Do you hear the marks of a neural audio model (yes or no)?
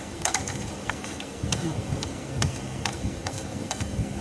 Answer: yes